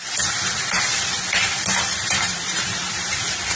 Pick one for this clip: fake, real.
fake